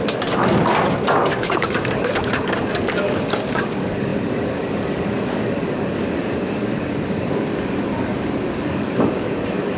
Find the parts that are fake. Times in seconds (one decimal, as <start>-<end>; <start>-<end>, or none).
0.0-9.8